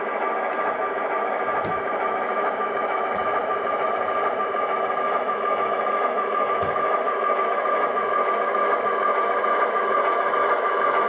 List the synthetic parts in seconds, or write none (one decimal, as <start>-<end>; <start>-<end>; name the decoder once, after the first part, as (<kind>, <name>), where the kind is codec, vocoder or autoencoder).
0.0-3.4 (autoencoder, DAC-VAE); 4.9-11.1